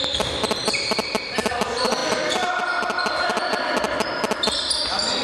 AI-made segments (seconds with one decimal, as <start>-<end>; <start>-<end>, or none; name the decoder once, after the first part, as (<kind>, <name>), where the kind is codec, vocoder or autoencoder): 0.0-2.0 (vocoder, BigVGAN v2)